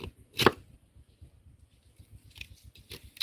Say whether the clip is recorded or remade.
recorded